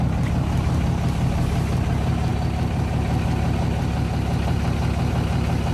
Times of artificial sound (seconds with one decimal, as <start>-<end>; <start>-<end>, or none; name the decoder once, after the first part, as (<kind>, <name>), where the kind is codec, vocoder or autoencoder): none